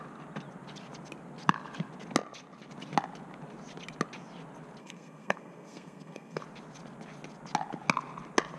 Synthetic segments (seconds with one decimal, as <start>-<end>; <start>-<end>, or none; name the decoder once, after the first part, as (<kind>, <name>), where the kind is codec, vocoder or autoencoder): 4.8-6.4 (codec, SNAC)